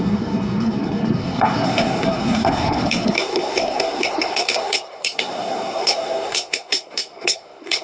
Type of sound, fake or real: fake